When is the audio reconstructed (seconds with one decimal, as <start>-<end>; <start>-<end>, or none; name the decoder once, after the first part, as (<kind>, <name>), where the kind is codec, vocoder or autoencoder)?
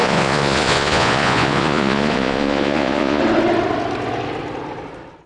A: 0.0-3.2 (vocoder, Vocos)